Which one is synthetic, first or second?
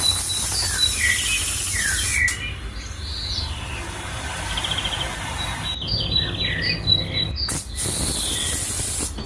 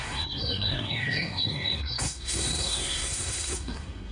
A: second